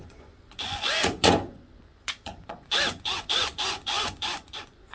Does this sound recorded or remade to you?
remade